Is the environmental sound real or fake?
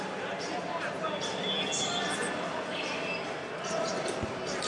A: real